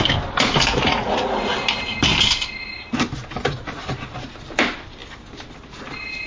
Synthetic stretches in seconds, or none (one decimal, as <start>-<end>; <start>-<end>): 0.8-1.5